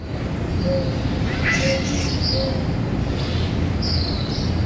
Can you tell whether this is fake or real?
real